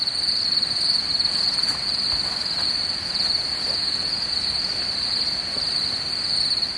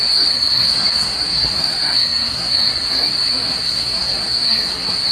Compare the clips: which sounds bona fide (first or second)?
first